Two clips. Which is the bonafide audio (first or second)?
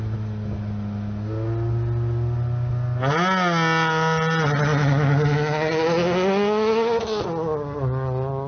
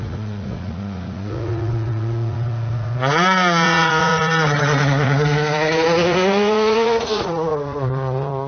first